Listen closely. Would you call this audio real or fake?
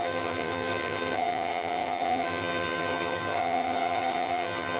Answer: fake